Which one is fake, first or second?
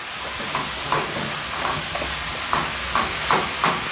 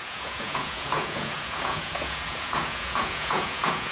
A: second